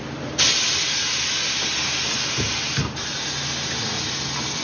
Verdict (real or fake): real